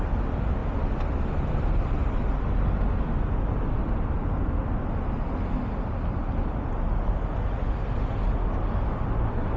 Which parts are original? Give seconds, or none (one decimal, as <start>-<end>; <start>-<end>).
0.0-9.6